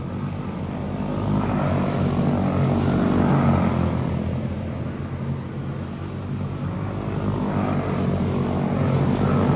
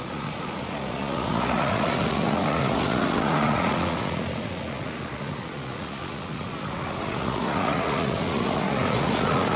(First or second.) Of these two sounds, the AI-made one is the second